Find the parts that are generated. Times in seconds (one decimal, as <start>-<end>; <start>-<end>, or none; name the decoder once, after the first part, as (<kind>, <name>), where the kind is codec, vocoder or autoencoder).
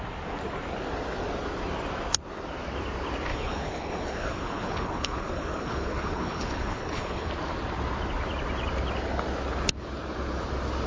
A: 3.3-7.3 (codec, HILCodec)